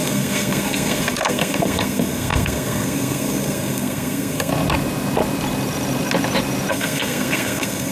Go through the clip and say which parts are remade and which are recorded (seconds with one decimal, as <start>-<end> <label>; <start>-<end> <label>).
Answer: 0.0-4.5 remade; 4.5-6.7 recorded; 6.7-7.9 remade